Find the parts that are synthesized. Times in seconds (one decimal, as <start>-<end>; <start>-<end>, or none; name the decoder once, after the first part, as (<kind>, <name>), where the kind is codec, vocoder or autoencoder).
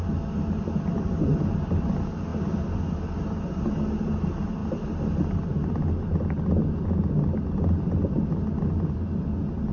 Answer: none